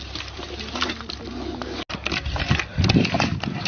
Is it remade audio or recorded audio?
recorded